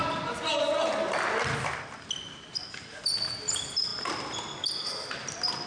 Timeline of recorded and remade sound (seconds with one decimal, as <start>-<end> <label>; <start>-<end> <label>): 0.0-5.7 recorded